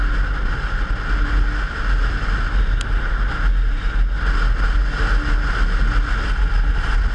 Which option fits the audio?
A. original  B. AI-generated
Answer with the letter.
A